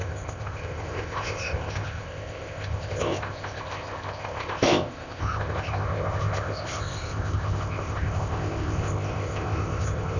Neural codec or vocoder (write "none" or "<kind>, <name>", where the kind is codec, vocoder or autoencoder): codec, ZipCodec